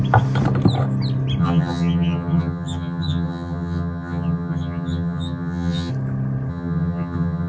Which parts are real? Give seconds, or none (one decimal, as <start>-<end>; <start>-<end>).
0.0-1.4; 5.9-6.5